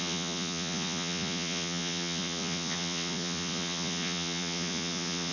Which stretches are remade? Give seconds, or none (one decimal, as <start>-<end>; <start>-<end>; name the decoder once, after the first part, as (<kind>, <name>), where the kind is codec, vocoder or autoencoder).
0.0-5.3 (vocoder, Vocos)